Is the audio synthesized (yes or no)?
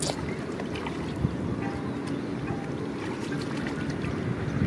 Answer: no